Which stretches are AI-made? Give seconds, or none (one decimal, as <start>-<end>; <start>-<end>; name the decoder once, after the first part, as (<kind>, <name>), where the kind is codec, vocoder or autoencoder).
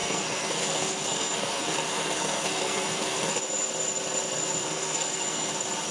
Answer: 0.0-3.4 (codec, SNAC); 4.6-5.5